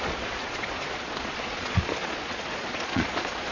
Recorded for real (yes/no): no